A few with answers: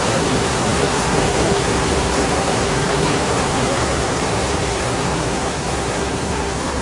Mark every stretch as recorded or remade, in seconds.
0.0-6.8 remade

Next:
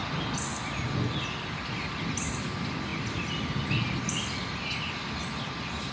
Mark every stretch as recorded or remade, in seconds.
0.0-5.9 recorded

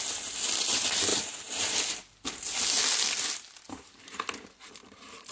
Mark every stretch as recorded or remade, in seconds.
0.0-5.3 recorded

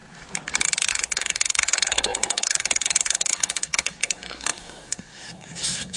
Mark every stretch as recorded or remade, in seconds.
0.0-0.9 recorded; 0.9-6.0 remade

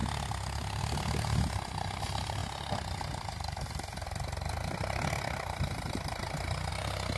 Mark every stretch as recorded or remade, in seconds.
0.0-7.2 recorded

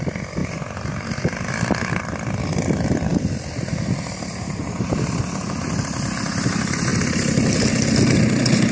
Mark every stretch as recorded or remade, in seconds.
0.0-0.4 recorded; 0.4-2.0 remade; 2.0-6.9 recorded; 6.9-7.7 remade; 7.7-8.7 recorded

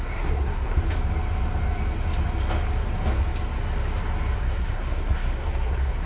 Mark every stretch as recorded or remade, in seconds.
0.0-0.8 remade; 0.8-4.4 recorded; 4.4-6.1 remade

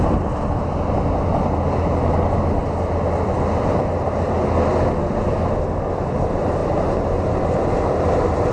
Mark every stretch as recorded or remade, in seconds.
0.0-8.5 recorded